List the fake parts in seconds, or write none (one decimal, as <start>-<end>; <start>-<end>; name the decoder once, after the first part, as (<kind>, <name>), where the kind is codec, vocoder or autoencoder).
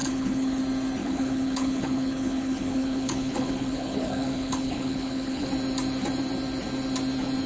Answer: 0.0-0.6 (codec, HILCodec); 1.0-5.5